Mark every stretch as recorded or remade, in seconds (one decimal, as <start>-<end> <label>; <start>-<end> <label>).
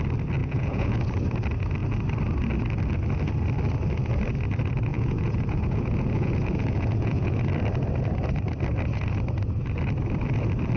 0.0-0.4 recorded; 0.4-1.0 remade; 1.0-4.9 recorded; 4.9-7.4 remade; 7.4-10.8 recorded